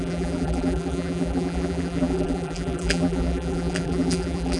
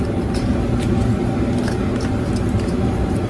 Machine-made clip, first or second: first